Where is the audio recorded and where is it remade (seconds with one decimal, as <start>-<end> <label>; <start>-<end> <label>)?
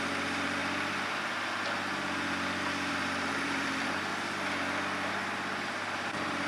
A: 0.0-0.6 remade; 0.6-2.9 recorded; 2.9-4.1 remade; 4.1-5.1 recorded; 5.1-6.5 remade